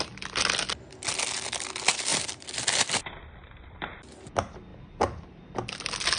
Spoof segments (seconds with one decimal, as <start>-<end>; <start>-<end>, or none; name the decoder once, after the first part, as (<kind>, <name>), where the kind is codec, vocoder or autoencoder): 2.1-3.8 (vocoder, BigVGAN v2); 4.7-5.5